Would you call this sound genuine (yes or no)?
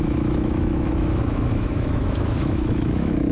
no